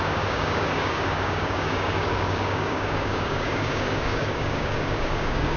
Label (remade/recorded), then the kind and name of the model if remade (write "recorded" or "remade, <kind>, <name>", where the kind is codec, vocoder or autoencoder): remade, codec, DAC